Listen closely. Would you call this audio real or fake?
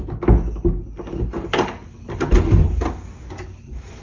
real